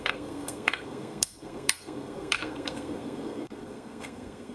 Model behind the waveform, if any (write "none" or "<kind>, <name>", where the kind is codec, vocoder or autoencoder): codec, SNAC